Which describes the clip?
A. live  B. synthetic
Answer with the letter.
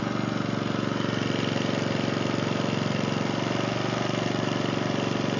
A